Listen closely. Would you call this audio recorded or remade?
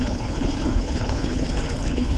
remade